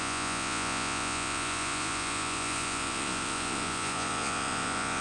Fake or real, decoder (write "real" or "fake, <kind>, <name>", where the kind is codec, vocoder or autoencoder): fake, vocoder, Vocos